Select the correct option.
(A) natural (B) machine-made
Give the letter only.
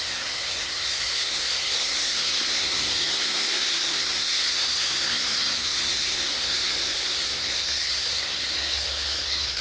B